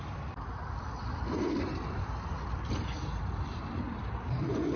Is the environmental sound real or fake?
fake